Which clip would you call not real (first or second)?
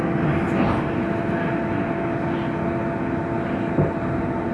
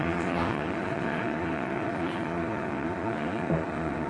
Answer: second